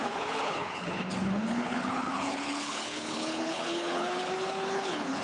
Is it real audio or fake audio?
fake